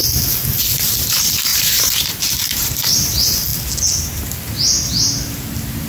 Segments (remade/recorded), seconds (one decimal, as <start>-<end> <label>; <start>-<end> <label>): 0.0-1.5 recorded; 1.5-2.7 remade; 2.7-5.9 recorded